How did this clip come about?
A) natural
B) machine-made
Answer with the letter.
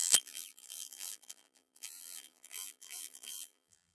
B